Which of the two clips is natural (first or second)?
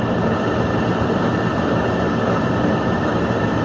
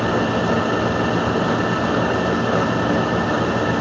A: second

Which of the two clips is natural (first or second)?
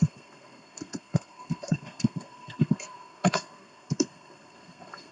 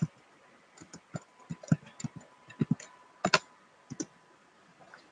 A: second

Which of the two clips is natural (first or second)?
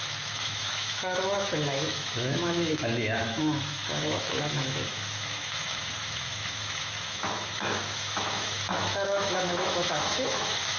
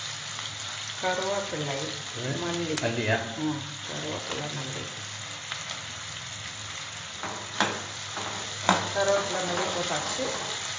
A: second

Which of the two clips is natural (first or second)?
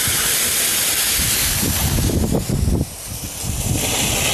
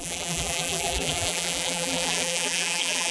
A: first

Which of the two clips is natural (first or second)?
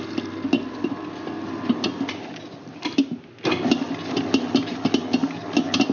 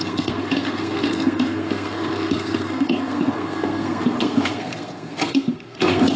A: first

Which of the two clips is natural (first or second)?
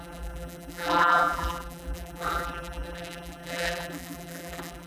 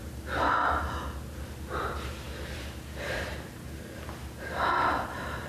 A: second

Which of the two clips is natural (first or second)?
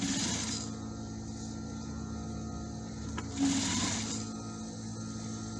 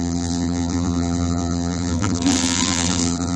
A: first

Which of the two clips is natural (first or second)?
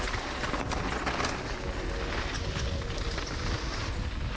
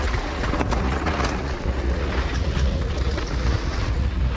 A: first